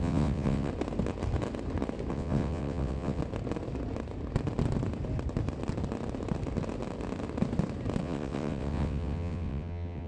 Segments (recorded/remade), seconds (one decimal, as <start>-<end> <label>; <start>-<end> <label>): 0.0-0.7 remade; 0.7-2.1 recorded; 2.1-3.2 remade; 3.2-8.0 recorded; 8.0-10.1 remade